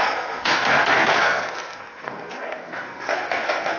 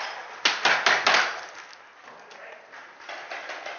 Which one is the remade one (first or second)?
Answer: first